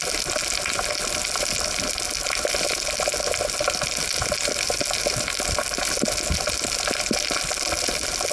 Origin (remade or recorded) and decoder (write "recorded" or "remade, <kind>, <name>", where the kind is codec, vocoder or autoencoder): recorded